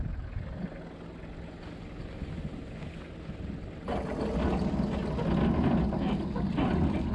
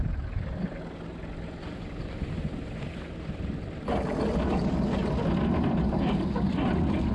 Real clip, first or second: first